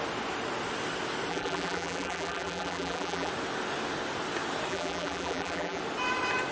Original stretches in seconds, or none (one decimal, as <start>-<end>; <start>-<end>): 0.0-1.3; 3.3-4.7; 5.8-6.5